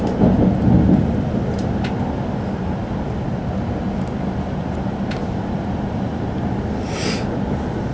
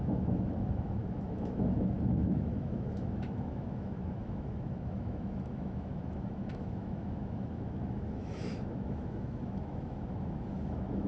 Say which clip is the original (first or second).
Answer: first